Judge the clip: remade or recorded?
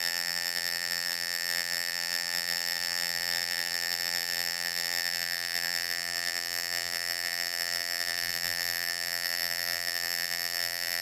remade